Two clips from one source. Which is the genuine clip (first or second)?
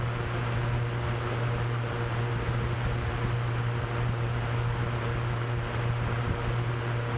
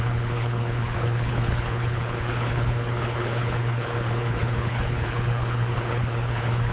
first